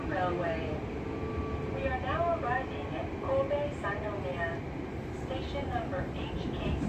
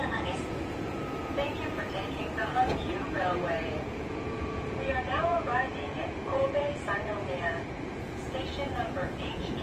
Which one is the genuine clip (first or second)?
first